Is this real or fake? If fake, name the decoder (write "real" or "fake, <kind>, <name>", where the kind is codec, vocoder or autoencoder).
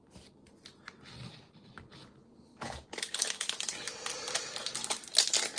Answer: real